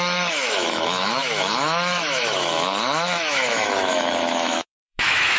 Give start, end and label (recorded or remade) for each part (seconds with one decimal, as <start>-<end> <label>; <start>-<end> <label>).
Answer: 0.0-5.4 remade